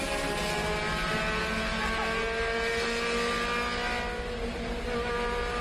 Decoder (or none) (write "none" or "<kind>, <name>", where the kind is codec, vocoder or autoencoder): none